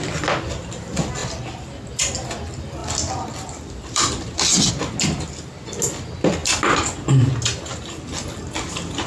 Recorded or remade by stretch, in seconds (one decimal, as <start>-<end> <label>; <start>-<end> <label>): 0.0-2.8 recorded; 2.8-4.7 remade; 4.7-9.1 recorded